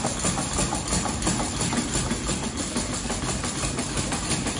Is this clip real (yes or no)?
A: yes